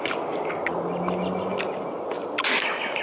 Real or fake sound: real